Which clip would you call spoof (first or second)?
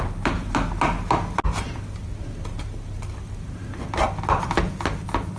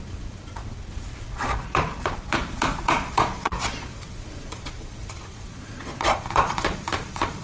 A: second